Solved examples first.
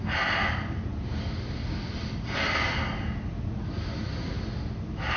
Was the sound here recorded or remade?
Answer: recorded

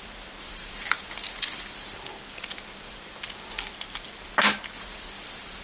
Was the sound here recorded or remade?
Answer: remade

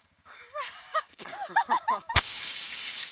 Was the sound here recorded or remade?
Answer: remade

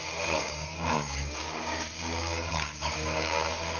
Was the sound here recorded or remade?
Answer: remade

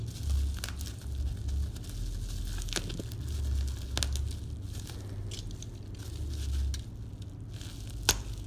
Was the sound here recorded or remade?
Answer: recorded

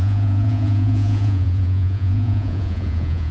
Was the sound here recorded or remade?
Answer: remade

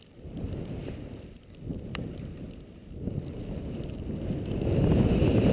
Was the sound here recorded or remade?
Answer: recorded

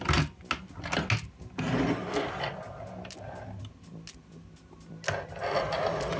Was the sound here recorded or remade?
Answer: recorded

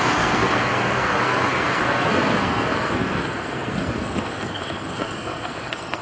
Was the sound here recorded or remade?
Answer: remade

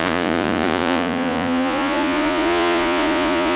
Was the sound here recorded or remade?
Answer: remade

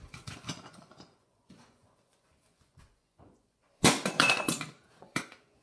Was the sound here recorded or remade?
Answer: remade